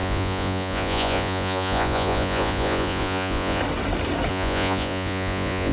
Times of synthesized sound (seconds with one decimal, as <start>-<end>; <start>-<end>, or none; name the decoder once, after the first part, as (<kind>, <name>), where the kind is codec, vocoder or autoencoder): 0.0-3.6 (vocoder, Vocos); 4.3-5.7